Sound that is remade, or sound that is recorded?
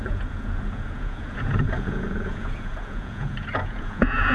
remade